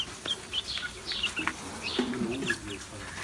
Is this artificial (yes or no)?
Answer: no